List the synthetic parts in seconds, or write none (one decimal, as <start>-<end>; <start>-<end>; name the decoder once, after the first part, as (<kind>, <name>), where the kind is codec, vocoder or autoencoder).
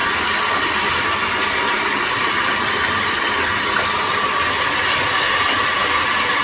none